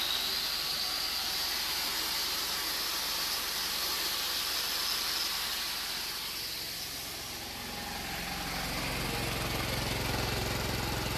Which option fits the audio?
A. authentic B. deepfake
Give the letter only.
A